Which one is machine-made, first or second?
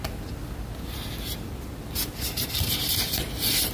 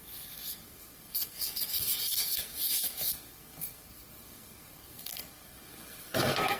second